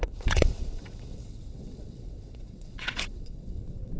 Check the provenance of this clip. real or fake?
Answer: fake